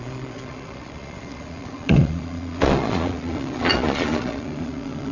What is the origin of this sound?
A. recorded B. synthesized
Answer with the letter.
B